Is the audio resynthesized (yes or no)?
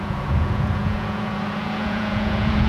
yes